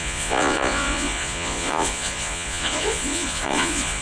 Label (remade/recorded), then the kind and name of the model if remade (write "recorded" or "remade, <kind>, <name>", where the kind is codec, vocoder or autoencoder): remade, vocoder, Vocos